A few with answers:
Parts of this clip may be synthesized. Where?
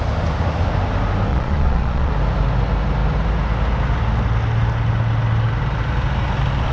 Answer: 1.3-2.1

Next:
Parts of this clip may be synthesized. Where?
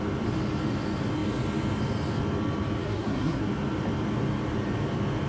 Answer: 2.8-3.5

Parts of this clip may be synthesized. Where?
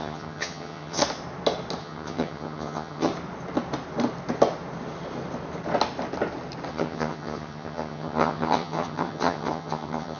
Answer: 0.0-1.0; 1.8-3.1; 6.7-10.2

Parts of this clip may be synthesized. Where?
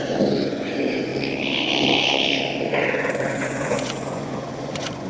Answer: 0.0-1.1; 2.7-5.1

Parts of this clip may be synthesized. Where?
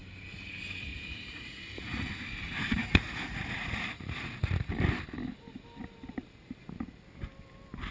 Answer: 0.9-2.1; 2.8-4.7